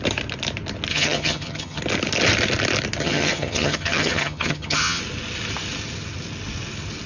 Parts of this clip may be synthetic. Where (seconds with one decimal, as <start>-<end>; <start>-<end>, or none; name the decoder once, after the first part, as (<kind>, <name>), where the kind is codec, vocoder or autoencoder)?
0.9-1.8 (vocoder, HiFi-GAN); 3.0-5.0